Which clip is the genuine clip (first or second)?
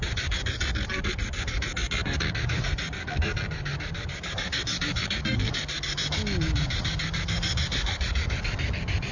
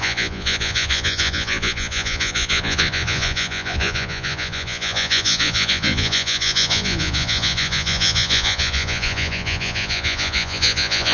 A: first